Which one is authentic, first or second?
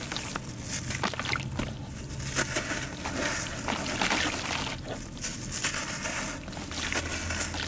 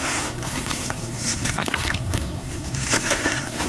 first